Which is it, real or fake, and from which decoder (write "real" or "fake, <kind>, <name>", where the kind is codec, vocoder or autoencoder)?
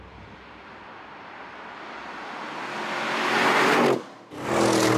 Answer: real